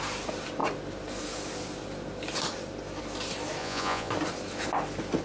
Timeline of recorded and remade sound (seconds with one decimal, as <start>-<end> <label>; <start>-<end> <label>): 0.0-3.6 recorded; 3.6-4.1 remade; 4.1-5.2 recorded